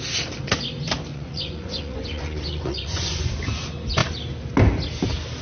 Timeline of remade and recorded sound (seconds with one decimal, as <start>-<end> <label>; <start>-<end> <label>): 0.0-1.1 recorded; 1.1-3.3 remade; 3.3-5.4 recorded